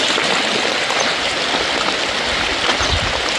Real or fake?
real